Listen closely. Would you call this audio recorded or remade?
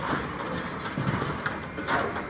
recorded